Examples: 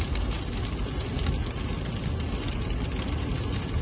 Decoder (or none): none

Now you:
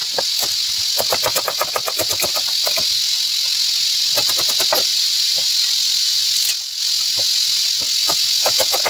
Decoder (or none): none